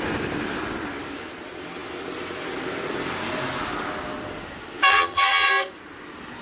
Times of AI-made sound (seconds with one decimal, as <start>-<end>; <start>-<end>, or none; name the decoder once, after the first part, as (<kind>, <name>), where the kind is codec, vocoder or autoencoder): 4.9-5.5 (vocoder, HiFi-GAN)